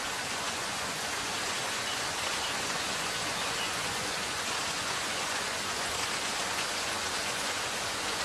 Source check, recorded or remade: remade